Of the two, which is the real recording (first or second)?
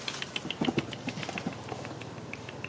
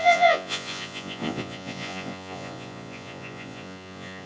first